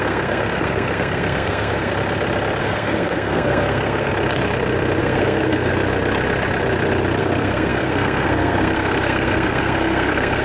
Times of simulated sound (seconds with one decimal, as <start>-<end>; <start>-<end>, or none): 0.0-1.9; 2.6-4.1; 5.0-5.7; 7.2-10.4